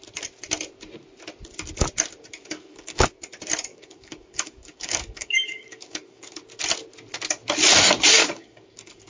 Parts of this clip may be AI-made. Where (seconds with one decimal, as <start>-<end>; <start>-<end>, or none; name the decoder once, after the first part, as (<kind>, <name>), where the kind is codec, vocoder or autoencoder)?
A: 2.4-3.0 (codec, DAC); 3.7-6.4; 8.2-9.1